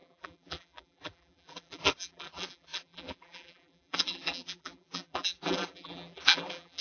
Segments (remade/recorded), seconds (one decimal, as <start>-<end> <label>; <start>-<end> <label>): 0.0-6.8 remade